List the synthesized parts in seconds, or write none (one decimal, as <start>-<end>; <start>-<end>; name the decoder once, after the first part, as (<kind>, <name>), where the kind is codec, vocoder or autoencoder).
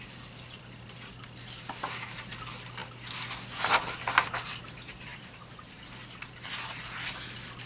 5.1-5.7 (vocoder, BigVGAN v2)